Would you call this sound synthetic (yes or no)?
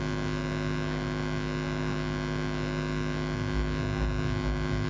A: no